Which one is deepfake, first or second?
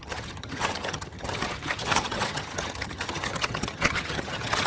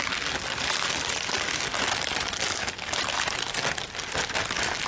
first